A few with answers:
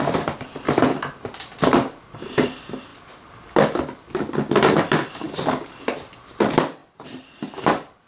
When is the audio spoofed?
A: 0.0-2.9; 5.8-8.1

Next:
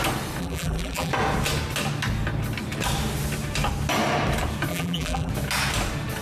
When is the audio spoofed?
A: 0.4-1.1; 4.7-5.3

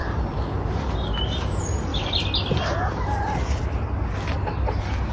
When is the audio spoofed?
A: 0.0-0.6

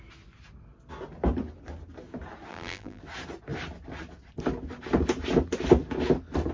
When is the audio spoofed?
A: 2.5-3.0

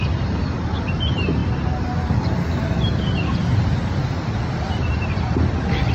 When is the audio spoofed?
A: none

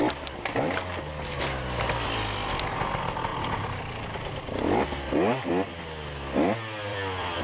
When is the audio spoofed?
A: 3.3-3.8; 6.9-7.4

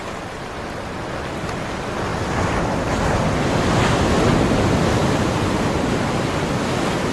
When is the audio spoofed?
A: 5.0-5.9